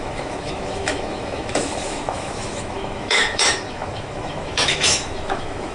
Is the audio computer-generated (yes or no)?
yes